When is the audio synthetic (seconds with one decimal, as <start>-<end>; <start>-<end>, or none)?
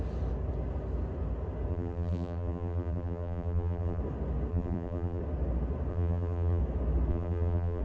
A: 1.7-4.0; 4.5-5.2; 5.9-6.6; 7.1-7.8